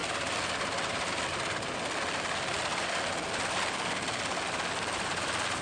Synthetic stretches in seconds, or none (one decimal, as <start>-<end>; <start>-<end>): 0.0-1.3; 2.7-3.3